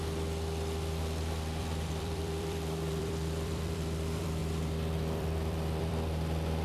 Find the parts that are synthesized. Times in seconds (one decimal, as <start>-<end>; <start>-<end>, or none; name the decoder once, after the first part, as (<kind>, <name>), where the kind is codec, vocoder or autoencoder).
1.6-6.6 (vocoder, BigVGAN v2)